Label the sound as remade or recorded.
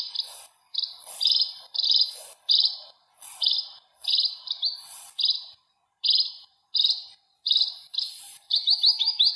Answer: recorded